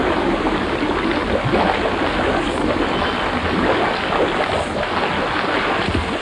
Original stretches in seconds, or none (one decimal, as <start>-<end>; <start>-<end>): 0.8-6.2